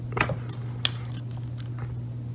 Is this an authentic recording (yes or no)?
yes